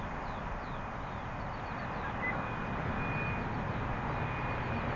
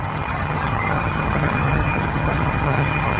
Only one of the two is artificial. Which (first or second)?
second